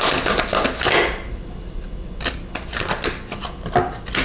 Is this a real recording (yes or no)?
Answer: yes